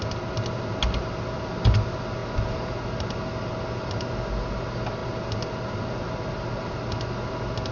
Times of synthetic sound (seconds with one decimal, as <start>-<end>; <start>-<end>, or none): none